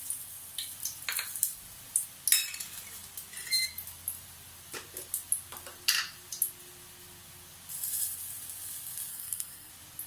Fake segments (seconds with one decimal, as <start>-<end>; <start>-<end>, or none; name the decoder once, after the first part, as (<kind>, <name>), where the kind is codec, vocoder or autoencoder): 9.1-9.7 (codec, SNAC)